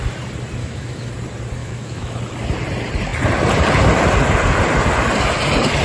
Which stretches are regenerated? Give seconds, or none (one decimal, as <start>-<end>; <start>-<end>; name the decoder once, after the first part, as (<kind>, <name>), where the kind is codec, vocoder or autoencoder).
0.6-1.1 (autoencoder, DAC-VAE); 1.6-2.2